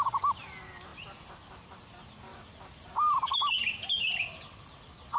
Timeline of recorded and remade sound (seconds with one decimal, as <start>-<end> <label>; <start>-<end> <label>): 0.0-5.2 recorded